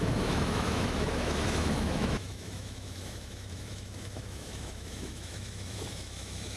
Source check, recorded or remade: remade